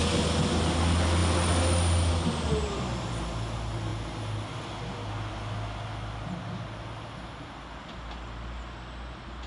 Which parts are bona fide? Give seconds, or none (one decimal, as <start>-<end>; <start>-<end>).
0.0-9.5